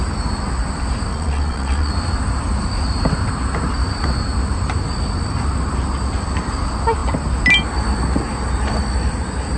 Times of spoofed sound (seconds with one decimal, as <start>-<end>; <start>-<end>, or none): 1.1-1.9